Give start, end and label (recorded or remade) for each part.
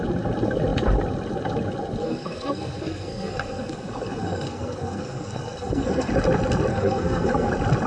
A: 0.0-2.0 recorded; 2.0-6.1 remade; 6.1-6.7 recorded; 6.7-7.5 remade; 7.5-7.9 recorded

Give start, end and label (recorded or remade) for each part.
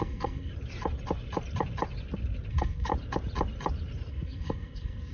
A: 0.0-0.5 remade; 0.5-2.5 recorded; 2.5-2.9 remade; 2.9-4.1 recorded; 4.1-5.1 remade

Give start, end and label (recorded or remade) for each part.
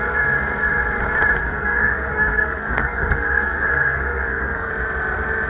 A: 0.0-1.4 recorded; 1.4-4.7 remade; 4.7-5.5 recorded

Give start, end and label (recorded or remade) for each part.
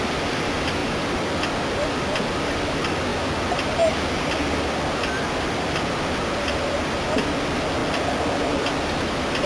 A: 0.0-9.5 recorded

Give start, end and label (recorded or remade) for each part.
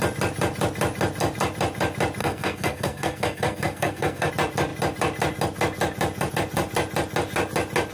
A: 0.0-2.2 recorded; 2.2-4.3 remade; 4.3-7.9 recorded